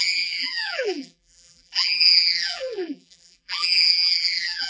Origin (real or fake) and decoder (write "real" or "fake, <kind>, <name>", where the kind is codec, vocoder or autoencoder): fake, vocoder, BigVGAN v2